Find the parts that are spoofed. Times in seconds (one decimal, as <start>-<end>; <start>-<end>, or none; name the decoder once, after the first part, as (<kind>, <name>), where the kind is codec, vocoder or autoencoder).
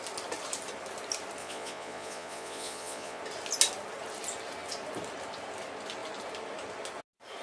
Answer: 1.4-3.2 (vocoder, Vocos)